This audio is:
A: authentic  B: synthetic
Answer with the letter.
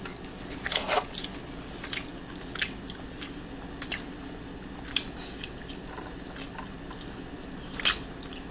A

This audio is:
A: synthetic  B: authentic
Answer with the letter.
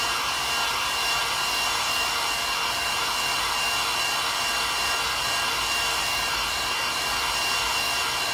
B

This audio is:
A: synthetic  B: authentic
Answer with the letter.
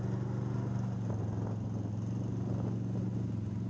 B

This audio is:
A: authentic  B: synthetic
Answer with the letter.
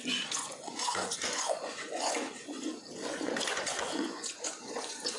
B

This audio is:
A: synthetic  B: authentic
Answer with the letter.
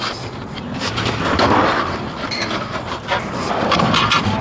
A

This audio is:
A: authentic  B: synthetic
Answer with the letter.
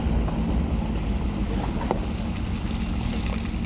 A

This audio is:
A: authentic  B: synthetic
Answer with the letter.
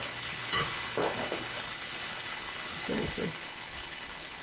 B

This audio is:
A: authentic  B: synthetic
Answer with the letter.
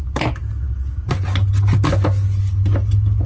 A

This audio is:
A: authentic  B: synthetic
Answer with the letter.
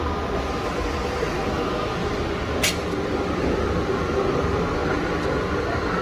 A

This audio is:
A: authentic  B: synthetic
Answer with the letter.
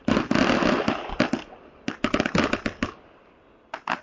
A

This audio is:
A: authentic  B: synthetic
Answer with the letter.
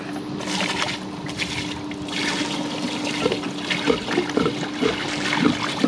A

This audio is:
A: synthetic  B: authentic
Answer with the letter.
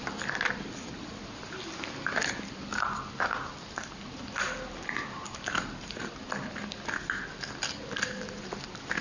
B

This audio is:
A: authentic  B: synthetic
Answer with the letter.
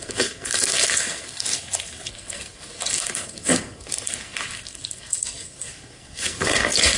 B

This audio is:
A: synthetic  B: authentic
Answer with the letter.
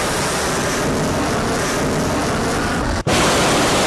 B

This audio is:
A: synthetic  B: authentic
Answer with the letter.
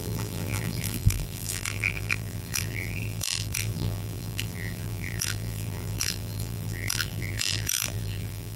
A